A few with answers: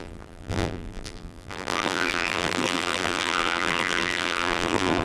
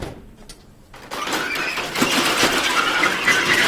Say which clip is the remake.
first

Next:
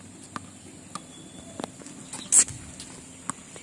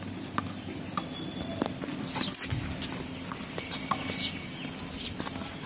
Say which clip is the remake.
second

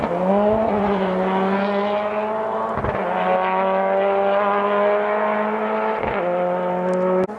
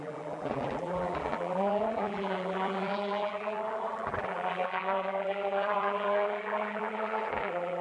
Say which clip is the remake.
second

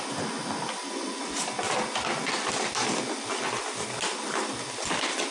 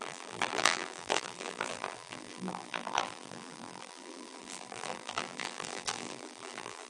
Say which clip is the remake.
second